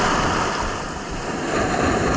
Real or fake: real